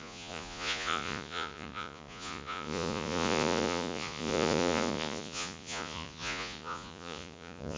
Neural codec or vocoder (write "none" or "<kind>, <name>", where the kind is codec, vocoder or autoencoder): vocoder, Vocos